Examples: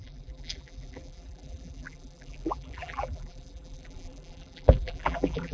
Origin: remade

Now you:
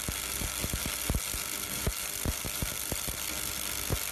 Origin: recorded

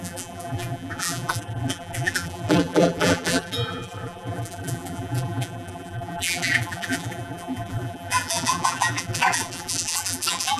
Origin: remade